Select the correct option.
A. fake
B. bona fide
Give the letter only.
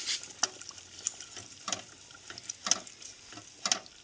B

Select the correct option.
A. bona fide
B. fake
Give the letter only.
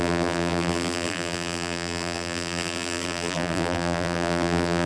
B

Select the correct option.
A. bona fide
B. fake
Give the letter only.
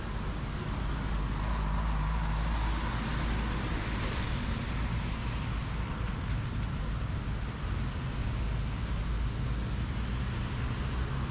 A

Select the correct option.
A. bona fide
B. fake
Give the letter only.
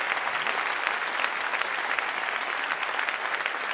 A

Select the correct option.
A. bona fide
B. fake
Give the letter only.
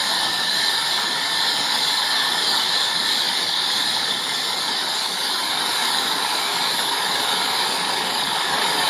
B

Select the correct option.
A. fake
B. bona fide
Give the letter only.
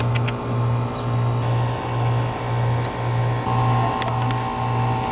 B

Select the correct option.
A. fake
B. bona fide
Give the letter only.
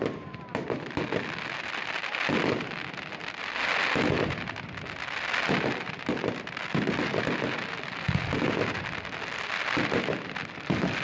B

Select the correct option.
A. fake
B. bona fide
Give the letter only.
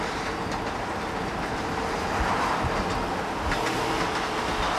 B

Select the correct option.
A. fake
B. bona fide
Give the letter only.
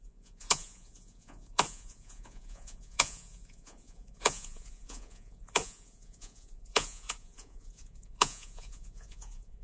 A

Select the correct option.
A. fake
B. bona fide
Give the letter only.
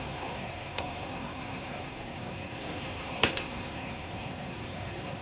A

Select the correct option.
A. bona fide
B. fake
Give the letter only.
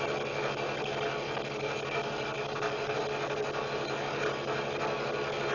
A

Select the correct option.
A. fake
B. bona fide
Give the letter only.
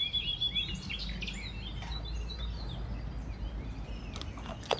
B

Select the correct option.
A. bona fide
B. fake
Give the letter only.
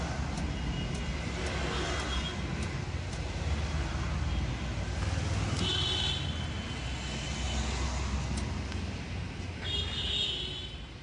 A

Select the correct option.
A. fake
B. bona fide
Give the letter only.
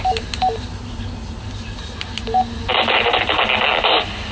B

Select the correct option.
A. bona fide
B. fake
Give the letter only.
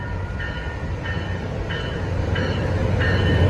A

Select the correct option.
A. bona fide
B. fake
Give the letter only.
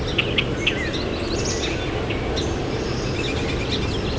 A